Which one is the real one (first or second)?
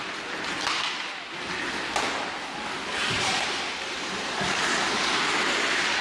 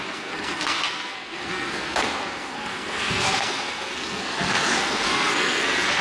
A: first